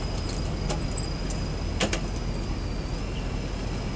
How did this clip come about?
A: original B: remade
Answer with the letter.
A